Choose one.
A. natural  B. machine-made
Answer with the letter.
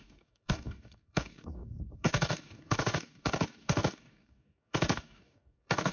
B